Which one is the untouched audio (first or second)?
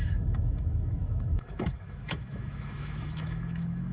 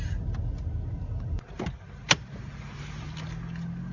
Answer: second